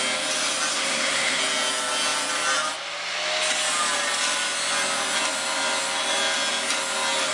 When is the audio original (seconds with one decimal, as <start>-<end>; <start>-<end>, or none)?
0.0-0.7; 1.4-7.3